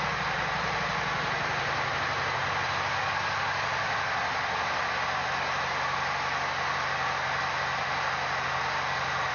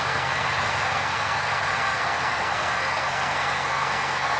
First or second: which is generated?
second